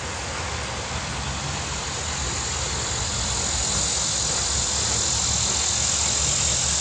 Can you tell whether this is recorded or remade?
recorded